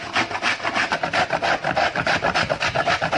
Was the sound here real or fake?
real